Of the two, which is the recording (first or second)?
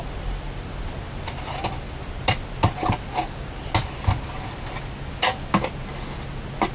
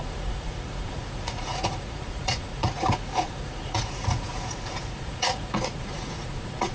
first